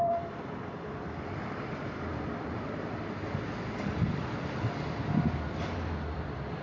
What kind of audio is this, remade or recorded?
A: remade